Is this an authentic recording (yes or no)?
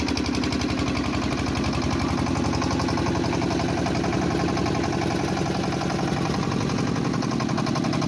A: yes